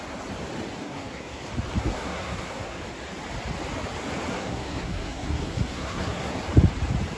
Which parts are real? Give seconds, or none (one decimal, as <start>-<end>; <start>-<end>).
0.0-0.8; 1.4-1.9; 2.8-4.3; 6.4-7.2